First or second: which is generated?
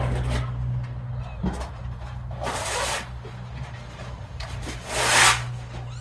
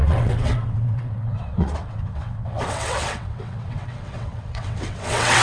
second